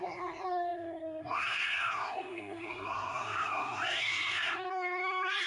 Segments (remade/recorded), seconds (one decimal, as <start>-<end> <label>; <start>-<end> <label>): 0.0-5.5 remade